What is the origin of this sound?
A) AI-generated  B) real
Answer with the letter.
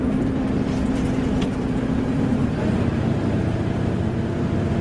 A